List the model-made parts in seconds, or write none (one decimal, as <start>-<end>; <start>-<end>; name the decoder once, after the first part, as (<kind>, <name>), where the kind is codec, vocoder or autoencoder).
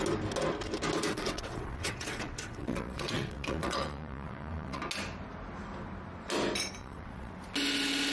1.1-4.8 (vocoder, WaveNeXt); 6.8-7.3